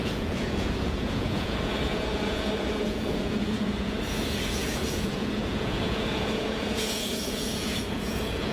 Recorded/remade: remade